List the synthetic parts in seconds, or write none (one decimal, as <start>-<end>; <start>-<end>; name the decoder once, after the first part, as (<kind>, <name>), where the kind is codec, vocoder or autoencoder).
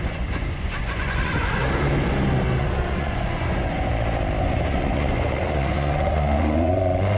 0.0-1.6 (vocoder, Vocos); 2.6-3.9; 4.4-7.2